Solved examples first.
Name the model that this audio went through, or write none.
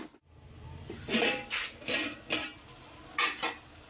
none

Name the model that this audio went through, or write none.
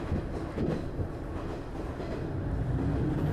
none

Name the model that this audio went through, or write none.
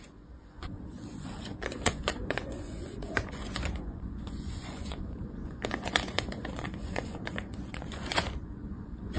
vocoder, Vocos